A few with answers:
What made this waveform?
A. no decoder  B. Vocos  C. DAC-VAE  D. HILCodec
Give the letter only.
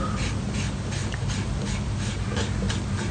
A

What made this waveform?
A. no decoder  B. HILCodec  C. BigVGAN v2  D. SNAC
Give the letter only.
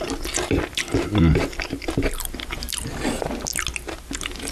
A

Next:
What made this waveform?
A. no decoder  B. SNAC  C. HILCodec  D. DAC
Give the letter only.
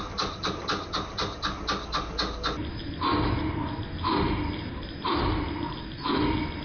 A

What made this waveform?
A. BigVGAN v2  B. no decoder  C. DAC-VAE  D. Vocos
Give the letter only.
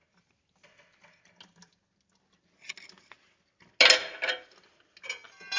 B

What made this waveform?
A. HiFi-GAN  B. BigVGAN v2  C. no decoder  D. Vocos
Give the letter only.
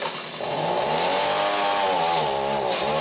C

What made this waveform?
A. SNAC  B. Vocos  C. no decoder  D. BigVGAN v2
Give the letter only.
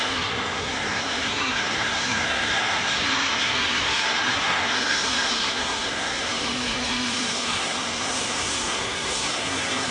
A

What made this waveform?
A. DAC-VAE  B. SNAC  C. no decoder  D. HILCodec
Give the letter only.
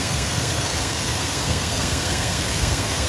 B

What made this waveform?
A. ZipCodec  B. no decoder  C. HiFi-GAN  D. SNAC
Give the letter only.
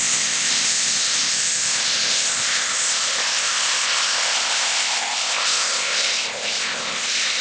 A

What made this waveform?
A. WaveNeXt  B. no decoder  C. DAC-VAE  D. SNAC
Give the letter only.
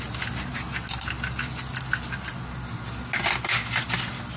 B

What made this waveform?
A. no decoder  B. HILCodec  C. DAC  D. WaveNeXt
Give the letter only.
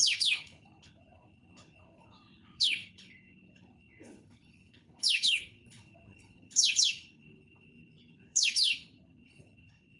B